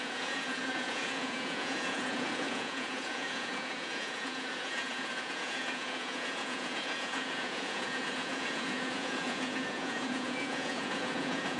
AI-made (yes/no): yes